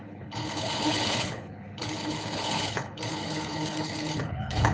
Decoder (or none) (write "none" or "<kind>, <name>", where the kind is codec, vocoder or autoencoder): codec, HILCodec